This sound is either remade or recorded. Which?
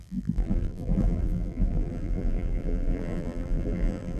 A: remade